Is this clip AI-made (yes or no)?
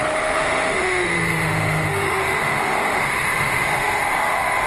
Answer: yes